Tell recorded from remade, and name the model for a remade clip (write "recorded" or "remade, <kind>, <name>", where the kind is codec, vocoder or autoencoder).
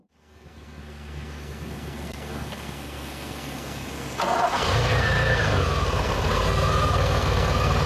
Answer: remade, codec, SNAC